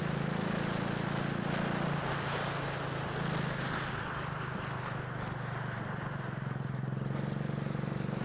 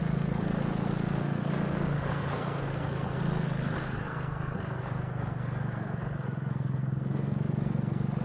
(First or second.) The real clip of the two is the first